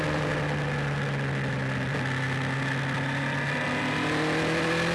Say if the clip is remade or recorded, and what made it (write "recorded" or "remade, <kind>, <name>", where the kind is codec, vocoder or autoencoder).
recorded